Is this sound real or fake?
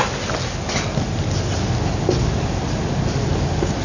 real